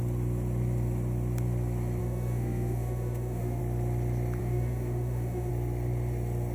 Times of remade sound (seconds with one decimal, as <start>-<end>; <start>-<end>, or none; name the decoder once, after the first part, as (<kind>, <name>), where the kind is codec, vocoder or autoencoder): 2.0-3.6 (autoencoder, DAC-VAE); 4.4-5.5